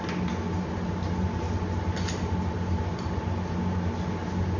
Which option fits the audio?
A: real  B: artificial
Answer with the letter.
A